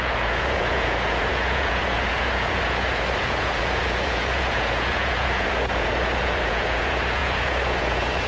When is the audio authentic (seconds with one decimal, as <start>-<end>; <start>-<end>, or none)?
none